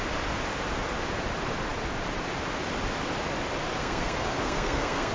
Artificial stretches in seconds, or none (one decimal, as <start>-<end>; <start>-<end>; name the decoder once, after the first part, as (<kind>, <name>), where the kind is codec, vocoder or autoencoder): 3.8-5.1 (codec, SNAC)